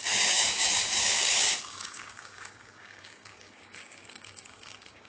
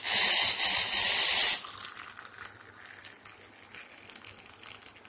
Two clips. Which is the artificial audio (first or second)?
first